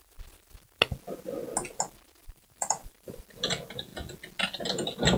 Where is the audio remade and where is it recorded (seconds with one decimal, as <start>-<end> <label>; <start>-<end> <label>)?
0.0-2.2 recorded; 2.2-3.2 remade; 3.2-5.2 recorded